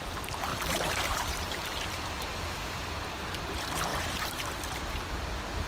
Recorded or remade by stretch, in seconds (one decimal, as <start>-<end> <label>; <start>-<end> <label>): 0.0-0.5 recorded; 0.5-1.8 remade; 1.8-5.7 recorded